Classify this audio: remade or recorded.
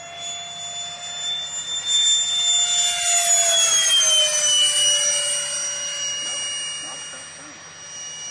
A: recorded